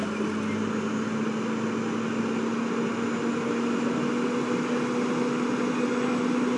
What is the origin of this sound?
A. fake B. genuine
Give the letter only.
B